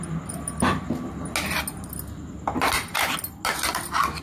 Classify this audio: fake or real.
real